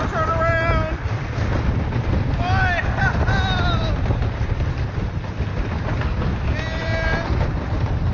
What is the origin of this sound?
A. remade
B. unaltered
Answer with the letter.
B